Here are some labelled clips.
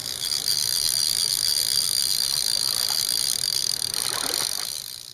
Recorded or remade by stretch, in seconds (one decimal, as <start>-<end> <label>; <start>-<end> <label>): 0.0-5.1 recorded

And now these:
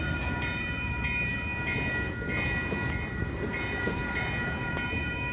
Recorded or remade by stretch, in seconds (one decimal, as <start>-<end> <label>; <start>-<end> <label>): 0.0-1.3 remade; 1.3-3.1 recorded; 3.1-5.3 remade

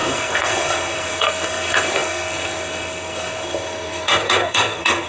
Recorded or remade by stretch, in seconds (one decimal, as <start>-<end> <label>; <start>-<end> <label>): 0.0-5.1 remade

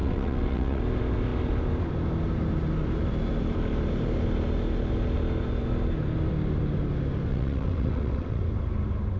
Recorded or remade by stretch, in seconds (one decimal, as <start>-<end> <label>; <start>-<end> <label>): 0.0-0.8 remade; 0.8-7.3 recorded; 7.3-8.4 remade; 8.4-9.2 recorded

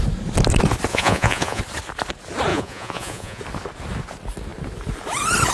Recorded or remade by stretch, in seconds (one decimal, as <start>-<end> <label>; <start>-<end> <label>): 0.0-0.9 recorded; 0.9-1.6 remade; 1.6-2.5 recorded; 2.5-3.4 remade; 3.4-5.5 recorded

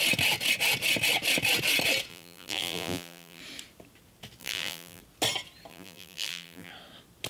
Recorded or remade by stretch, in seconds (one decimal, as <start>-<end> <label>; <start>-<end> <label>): 0.0-2.1 recorded; 2.1-3.4 remade; 3.4-4.4 recorded; 4.4-5.0 remade; 5.0-5.7 recorded; 5.7-6.7 remade; 6.7-7.3 recorded

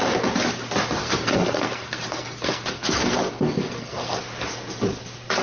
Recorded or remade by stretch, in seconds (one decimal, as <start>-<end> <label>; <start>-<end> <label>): 0.0-1.0 recorded; 1.0-4.2 remade; 4.2-5.4 recorded